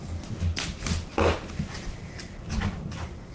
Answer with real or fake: real